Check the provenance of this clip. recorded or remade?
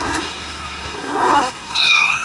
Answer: remade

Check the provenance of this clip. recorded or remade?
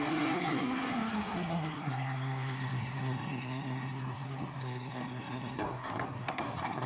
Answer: remade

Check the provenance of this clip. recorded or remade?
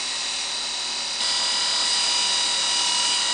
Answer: recorded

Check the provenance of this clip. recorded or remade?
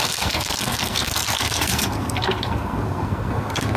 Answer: remade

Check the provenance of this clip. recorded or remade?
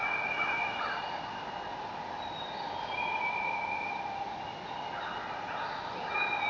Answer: recorded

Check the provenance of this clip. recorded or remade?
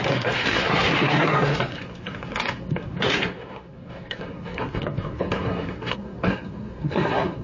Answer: remade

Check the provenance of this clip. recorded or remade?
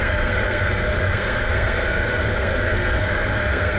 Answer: remade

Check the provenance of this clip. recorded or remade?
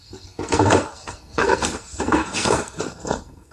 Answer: remade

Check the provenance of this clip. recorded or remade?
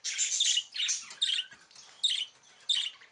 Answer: recorded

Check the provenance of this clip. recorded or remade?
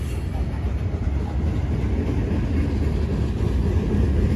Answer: recorded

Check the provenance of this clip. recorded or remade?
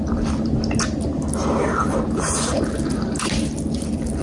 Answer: recorded